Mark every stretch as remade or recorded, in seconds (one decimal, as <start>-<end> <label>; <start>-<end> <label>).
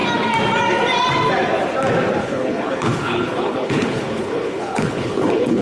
0.0-2.2 recorded; 2.2-5.6 remade